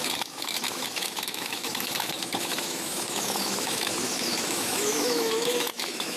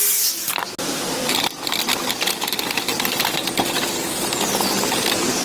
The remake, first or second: first